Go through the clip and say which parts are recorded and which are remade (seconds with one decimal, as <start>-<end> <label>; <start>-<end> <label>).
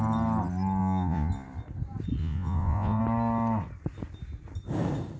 0.0-0.8 recorded; 0.8-1.3 remade; 1.3-2.2 recorded; 2.2-3.0 remade; 3.0-5.2 recorded